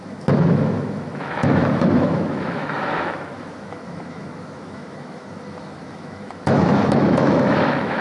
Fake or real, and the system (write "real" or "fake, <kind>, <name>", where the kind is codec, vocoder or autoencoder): fake, autoencoder, DAC-VAE